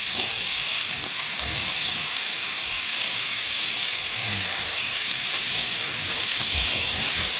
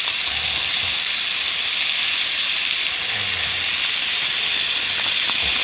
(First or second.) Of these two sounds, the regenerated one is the first